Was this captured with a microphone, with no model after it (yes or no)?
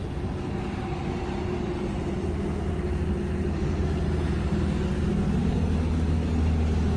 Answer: yes